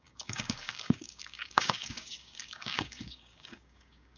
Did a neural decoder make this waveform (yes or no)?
yes